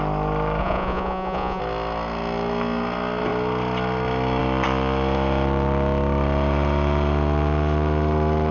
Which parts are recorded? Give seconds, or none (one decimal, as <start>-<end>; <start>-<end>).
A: 0.0-0.6; 1.6-8.5